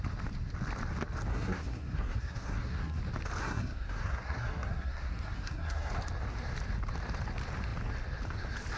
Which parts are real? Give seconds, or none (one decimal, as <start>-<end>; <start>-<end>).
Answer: 0.0-1.3; 3.0-3.4; 5.9-8.8